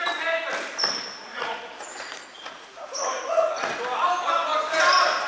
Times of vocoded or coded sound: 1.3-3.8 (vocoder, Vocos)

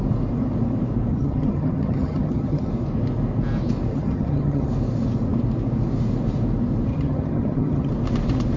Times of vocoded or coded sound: 1.1-2.7 (vocoder, HiFi-GAN); 3.9-4.7; 6.9-7.9

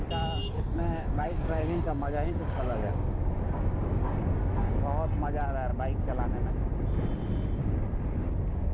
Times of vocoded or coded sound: 0.4-3.2 (codec, DAC)

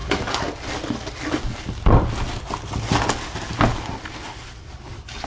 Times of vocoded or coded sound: none